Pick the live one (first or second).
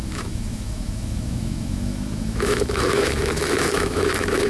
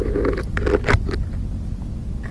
second